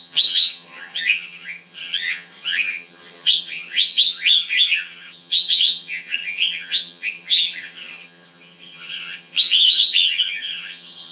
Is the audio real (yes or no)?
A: no